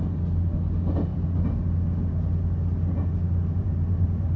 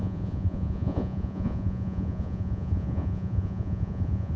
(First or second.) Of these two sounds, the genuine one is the first